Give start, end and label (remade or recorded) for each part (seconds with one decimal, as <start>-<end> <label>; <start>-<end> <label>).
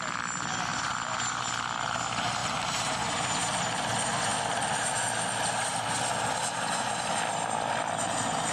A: 0.0-0.7 recorded; 0.7-1.4 remade; 1.4-2.4 recorded; 2.4-2.9 remade; 2.9-8.5 recorded